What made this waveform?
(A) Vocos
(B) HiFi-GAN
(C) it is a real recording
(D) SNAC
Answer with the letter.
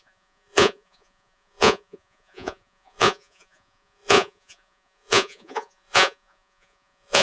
A